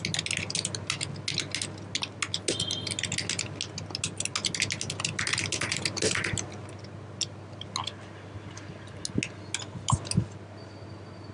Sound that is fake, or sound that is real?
real